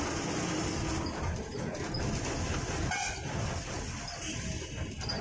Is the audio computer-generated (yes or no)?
no